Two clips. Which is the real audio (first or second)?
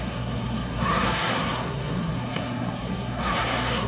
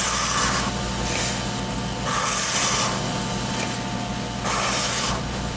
second